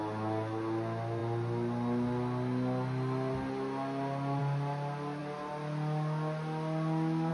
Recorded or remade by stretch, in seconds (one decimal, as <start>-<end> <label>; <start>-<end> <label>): 0.0-7.3 recorded